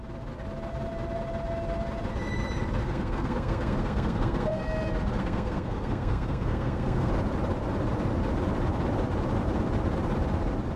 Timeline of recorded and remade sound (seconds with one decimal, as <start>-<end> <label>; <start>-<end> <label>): 0.0-2.8 recorded; 2.8-4.6 remade; 4.6-5.2 recorded; 5.2-7.1 remade; 7.1-10.8 recorded